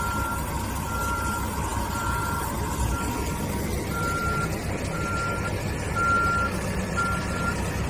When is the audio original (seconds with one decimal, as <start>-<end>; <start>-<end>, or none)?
0.0-7.9